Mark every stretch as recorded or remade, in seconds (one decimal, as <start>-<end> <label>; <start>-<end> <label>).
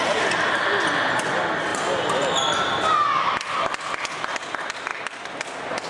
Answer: 0.0-5.9 recorded